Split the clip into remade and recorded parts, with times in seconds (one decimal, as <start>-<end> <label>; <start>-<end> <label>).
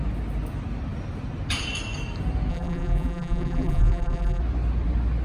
0.0-2.5 recorded; 2.5-4.4 remade; 4.4-5.2 recorded